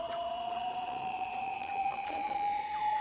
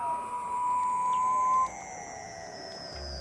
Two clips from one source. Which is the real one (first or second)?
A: second